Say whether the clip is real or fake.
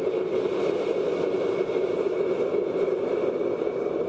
real